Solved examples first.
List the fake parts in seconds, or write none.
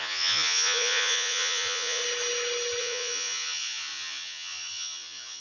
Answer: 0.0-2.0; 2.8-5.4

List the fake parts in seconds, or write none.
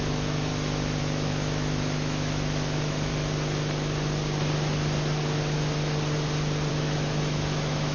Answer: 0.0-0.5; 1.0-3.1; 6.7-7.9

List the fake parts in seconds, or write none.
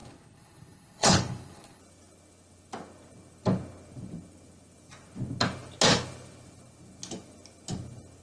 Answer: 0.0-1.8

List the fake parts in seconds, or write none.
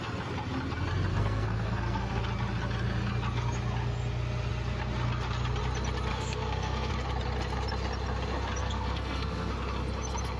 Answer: 1.1-2.2; 6.1-6.9; 8.6-9.5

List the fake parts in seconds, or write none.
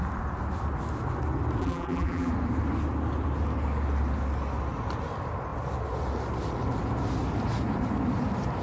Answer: 1.6-2.3